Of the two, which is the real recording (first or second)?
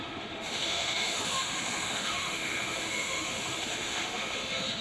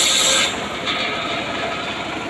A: second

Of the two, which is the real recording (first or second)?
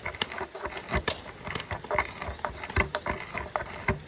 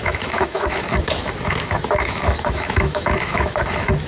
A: first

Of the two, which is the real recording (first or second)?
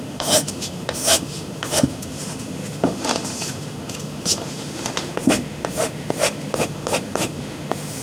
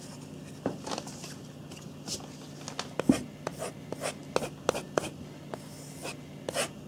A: second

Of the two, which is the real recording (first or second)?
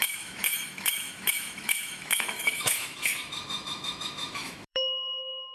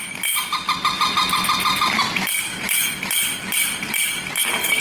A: second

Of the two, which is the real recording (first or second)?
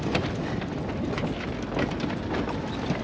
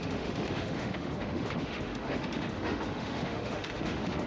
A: first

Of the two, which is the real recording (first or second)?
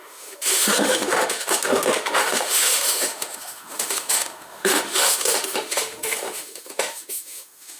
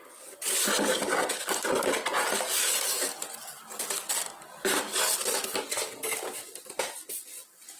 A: second